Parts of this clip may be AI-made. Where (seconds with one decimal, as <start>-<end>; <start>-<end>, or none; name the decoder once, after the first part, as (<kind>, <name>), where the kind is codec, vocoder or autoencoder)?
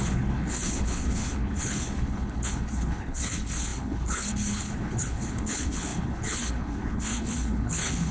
0.0-8.1 (codec, HILCodec)